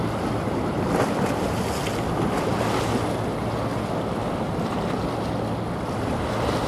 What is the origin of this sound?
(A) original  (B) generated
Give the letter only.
A